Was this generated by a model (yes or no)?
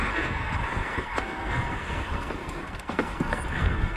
yes